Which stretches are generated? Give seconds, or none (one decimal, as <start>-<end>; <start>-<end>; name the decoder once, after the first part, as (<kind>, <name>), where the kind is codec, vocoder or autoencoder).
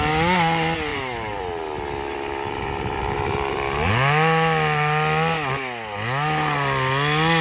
0.9-1.4 (vocoder, BigVGAN v2); 2.1-3.9